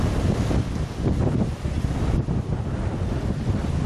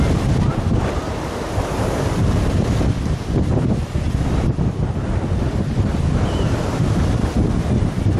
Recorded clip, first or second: first